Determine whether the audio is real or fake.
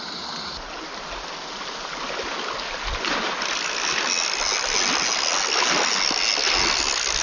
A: real